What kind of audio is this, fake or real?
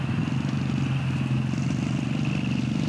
real